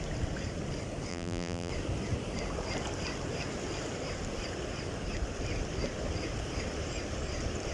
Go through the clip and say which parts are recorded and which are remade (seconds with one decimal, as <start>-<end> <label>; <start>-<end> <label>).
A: 0.0-1.1 recorded; 1.1-1.7 remade; 1.7-7.7 recorded